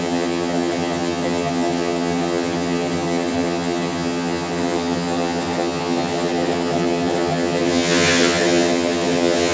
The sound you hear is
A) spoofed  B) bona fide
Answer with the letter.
A